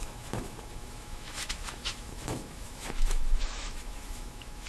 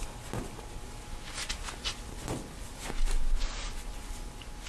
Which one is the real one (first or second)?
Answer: second